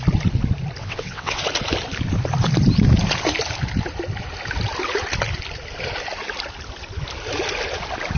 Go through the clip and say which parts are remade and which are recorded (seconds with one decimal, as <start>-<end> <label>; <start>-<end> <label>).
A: 0.0-0.8 recorded; 0.8-1.4 remade; 1.4-8.2 recorded